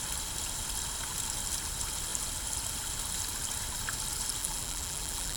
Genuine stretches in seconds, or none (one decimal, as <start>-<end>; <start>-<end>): 0.0-4.4